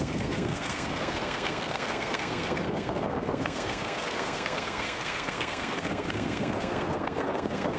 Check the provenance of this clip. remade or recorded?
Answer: remade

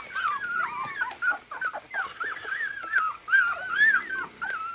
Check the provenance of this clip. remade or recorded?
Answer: recorded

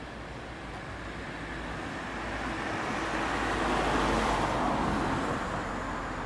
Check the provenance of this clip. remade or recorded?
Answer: recorded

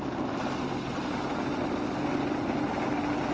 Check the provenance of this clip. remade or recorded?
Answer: recorded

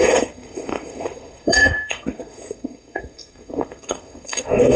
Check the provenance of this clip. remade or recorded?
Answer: remade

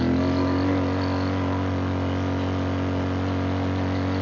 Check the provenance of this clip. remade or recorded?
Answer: recorded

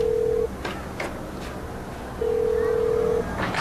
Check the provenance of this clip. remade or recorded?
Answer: recorded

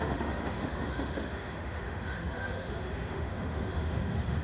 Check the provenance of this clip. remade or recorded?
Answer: remade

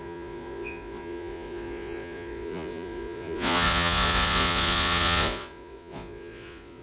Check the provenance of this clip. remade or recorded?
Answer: remade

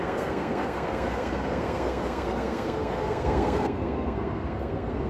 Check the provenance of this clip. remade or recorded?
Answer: remade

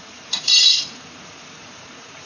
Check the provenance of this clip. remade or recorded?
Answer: remade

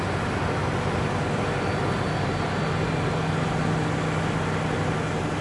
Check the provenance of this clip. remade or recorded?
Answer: recorded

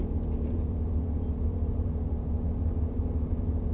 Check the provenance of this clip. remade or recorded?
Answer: recorded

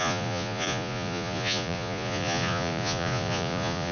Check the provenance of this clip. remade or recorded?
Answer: remade